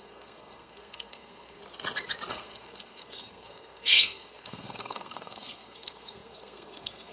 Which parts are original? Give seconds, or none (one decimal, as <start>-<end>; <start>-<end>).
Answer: 1.6-2.3

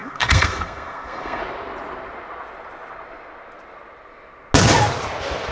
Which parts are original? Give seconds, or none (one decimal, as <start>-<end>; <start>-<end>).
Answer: 1.4-5.5

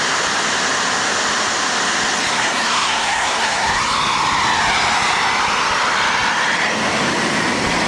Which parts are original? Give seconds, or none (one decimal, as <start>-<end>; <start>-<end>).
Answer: 0.0-2.3; 3.8-7.9

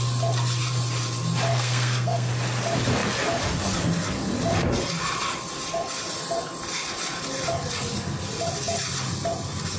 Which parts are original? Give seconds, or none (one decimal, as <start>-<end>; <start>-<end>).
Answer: 0.0-1.5; 2.3-9.8

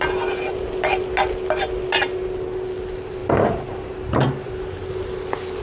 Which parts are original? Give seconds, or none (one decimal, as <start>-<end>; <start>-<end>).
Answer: 0.0-5.6

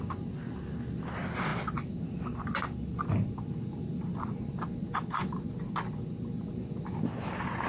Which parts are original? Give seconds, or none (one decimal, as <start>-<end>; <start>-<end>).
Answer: 0.0-7.7